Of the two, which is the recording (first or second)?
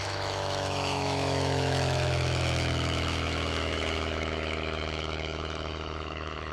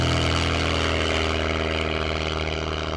second